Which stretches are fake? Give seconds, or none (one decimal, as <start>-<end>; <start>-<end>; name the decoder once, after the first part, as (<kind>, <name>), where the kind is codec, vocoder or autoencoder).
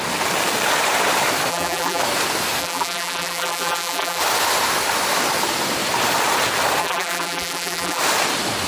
1.5-2.0 (vocoder, BigVGAN v2); 2.6-4.2; 6.8-8.0